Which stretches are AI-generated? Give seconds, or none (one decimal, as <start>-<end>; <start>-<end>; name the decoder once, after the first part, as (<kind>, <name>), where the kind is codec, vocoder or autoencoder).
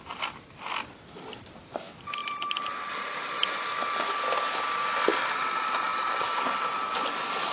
none